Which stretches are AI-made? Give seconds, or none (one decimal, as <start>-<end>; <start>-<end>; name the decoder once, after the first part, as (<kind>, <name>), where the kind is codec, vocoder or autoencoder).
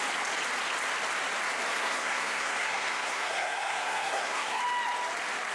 1.7-4.6 (codec, SNAC)